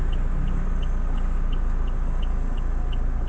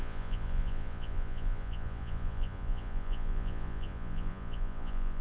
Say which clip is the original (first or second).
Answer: first